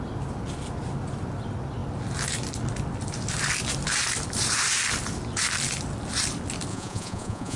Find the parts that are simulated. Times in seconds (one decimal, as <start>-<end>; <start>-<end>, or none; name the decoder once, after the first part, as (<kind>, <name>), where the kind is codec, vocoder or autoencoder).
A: 6.7-7.6 (vocoder, Vocos)